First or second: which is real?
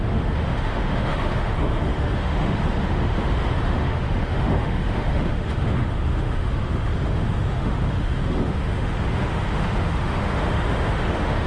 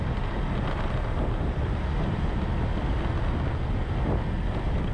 second